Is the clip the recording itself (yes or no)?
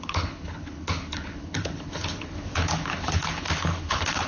no